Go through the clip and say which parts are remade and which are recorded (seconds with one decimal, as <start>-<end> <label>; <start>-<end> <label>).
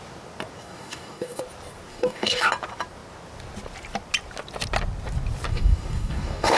0.0-0.6 recorded; 0.6-1.4 remade; 1.4-1.9 recorded; 1.9-2.5 remade; 2.5-5.5 recorded; 5.5-6.6 remade